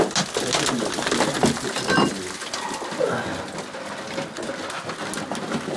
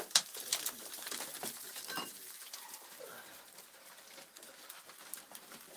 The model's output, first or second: second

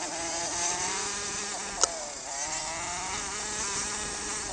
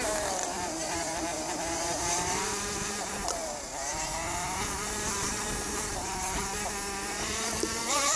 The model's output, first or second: second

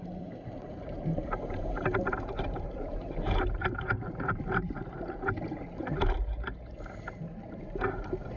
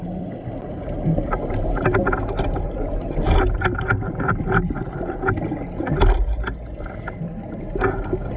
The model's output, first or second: first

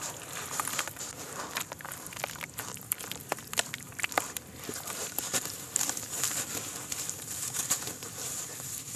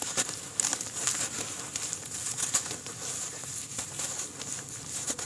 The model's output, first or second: first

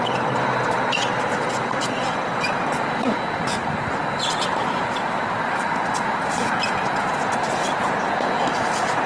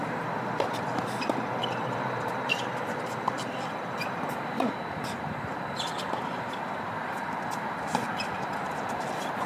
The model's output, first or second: second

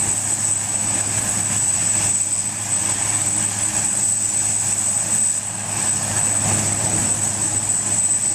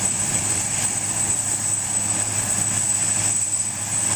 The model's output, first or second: second